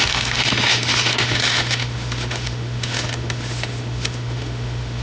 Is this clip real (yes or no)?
no